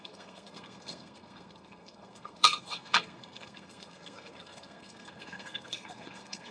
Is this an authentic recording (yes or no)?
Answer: no